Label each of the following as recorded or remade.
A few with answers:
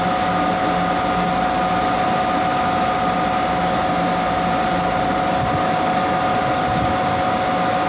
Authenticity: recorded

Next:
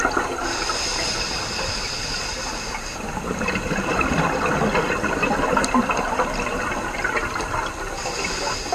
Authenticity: recorded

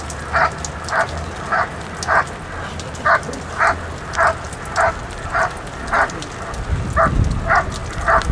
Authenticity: recorded